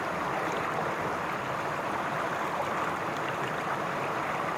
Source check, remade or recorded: recorded